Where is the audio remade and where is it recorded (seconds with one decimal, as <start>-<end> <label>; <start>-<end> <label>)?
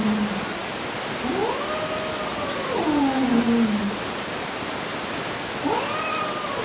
0.0-2.3 recorded; 2.3-2.8 remade; 2.8-6.6 recorded